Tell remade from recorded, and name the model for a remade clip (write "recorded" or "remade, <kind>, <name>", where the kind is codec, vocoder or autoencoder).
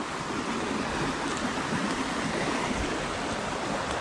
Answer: recorded